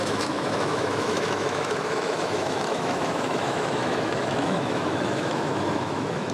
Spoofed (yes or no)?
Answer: yes